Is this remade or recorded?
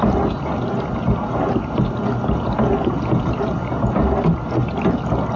recorded